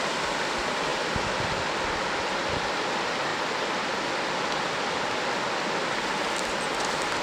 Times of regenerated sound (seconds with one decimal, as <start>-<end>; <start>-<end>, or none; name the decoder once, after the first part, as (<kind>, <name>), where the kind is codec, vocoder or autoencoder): none